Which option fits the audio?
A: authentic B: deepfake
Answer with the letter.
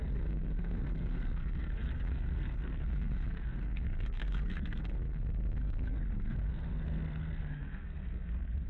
B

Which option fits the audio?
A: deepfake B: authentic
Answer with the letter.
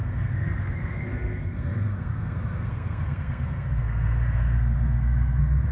A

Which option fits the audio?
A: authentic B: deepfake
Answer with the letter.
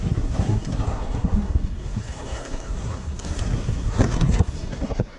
B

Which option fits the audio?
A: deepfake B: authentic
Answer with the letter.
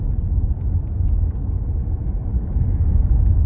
B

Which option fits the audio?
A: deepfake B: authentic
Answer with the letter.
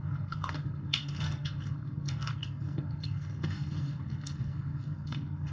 A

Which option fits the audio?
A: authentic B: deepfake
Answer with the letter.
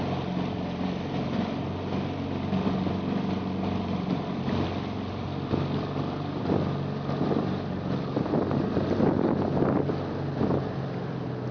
A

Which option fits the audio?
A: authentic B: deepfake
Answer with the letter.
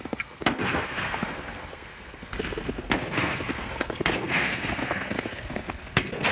B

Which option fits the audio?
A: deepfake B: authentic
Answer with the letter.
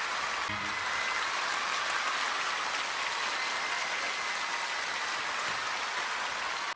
B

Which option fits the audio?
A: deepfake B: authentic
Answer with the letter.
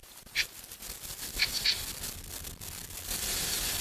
B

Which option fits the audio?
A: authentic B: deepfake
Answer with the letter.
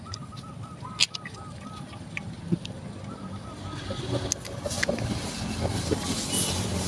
A